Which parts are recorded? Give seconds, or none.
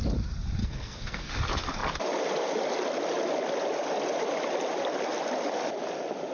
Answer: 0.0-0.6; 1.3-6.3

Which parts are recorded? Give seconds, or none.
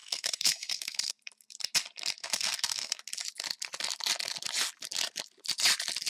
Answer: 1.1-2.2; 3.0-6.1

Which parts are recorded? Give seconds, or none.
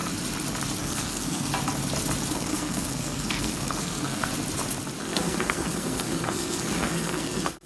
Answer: 0.0-0.8; 1.5-2.3; 4.3-5.0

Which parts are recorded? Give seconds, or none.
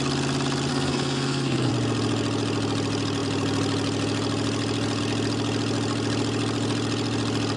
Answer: 0.0-0.7; 1.7-7.6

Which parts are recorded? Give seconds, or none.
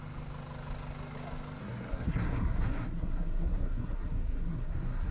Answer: 0.0-1.6